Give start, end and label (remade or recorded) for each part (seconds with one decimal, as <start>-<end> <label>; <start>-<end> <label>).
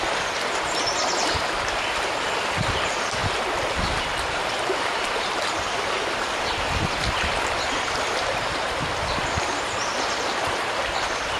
0.0-11.4 remade